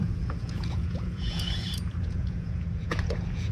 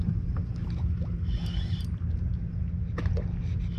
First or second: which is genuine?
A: second